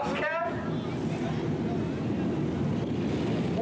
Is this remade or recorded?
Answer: recorded